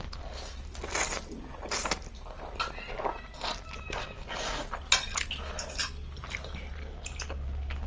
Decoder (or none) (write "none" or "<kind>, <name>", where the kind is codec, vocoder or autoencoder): none